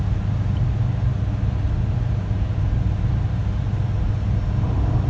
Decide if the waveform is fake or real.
real